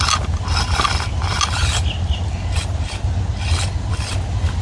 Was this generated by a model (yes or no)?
no